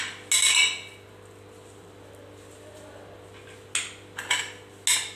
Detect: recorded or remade recorded